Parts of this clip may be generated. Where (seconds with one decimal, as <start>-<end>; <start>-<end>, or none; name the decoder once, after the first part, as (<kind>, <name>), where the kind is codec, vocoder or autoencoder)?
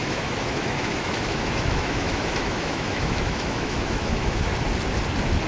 0.0-4.5 (autoencoder, DAC-VAE)